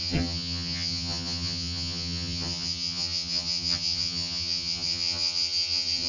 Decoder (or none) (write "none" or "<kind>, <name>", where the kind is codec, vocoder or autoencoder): vocoder, HiFi-GAN